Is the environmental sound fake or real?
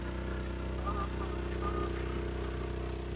real